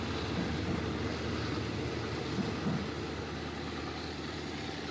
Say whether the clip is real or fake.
real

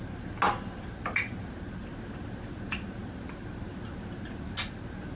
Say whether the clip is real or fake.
real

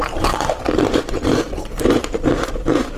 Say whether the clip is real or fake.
fake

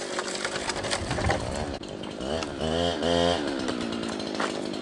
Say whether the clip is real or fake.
real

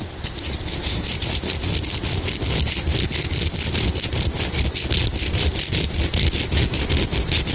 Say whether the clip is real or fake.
real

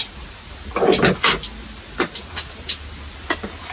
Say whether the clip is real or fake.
real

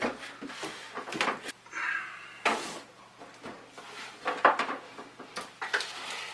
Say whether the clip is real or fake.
real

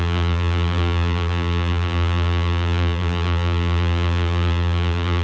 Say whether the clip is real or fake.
fake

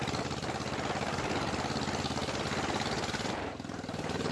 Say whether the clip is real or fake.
real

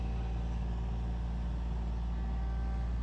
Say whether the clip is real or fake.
real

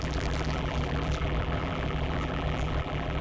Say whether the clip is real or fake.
fake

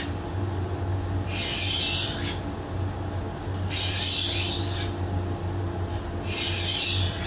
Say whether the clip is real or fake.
real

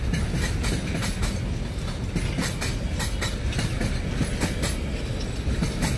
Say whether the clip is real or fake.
real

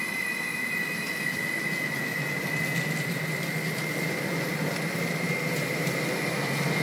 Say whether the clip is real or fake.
real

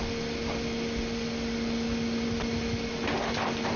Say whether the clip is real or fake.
real